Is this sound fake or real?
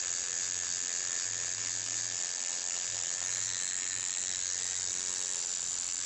fake